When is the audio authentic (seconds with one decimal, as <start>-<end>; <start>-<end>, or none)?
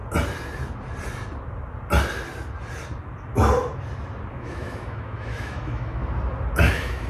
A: 0.0-4.3; 6.0-6.6